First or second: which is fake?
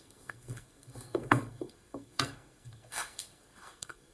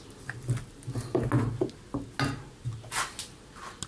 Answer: first